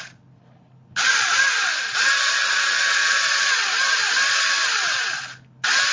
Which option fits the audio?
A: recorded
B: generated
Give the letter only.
A